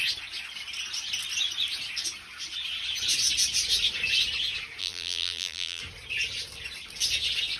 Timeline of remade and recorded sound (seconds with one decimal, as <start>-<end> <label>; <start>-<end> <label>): 0.0-4.8 recorded; 4.8-5.8 remade; 5.8-7.6 recorded